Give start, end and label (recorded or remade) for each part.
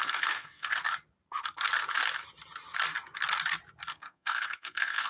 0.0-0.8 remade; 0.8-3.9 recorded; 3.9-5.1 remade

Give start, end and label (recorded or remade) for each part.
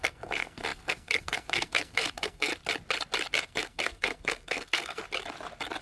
0.0-2.5 remade; 2.5-3.3 recorded; 3.3-5.0 remade; 5.0-5.8 recorded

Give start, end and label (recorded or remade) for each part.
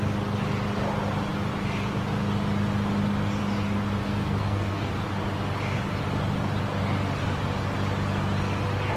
0.0-4.0 recorded; 4.0-4.9 remade; 4.9-9.0 recorded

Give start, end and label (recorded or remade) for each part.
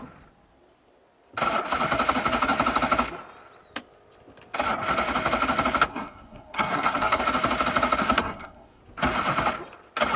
0.0-5.9 recorded; 5.9-7.2 remade; 7.2-8.0 recorded; 8.0-8.8 remade; 8.8-10.2 recorded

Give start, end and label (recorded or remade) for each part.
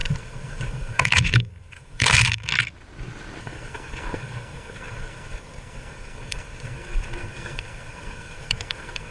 0.0-2.5 remade; 2.5-3.4 recorded; 3.4-9.1 remade